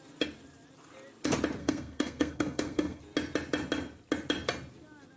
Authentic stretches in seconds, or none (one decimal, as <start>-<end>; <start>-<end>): 0.0-1.6; 3.0-5.2